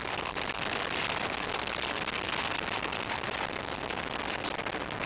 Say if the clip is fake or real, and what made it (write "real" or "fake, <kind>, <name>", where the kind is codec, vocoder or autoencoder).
real